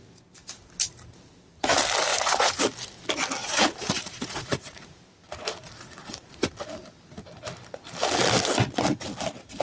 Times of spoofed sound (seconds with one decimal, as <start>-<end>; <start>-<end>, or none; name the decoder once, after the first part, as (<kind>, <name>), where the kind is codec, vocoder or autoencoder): 2.1-2.6 (vocoder, Vocos); 3.4-5.0; 5.6-6.5